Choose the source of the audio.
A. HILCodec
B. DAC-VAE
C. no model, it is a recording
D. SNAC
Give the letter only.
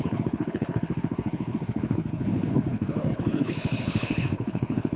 A